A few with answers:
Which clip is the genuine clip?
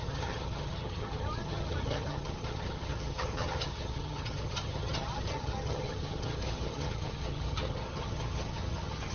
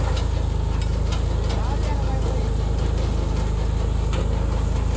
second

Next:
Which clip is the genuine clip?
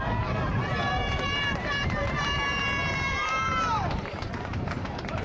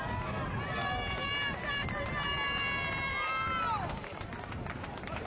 second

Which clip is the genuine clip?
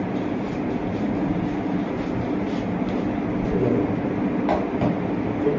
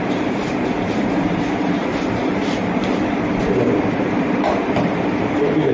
first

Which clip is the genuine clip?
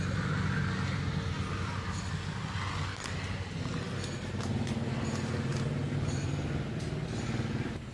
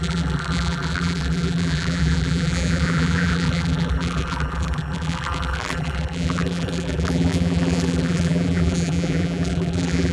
first